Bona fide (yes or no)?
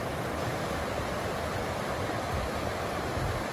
yes